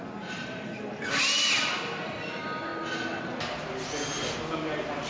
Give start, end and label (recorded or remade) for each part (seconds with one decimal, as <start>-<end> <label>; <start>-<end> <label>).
0.0-5.1 recorded